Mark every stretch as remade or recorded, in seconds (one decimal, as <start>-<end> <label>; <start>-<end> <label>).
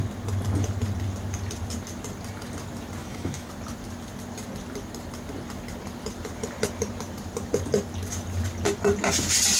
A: 0.0-3.0 recorded; 3.0-3.5 remade; 3.5-9.6 recorded